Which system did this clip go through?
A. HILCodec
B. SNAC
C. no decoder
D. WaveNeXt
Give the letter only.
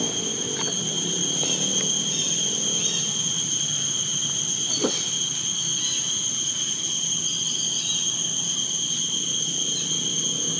C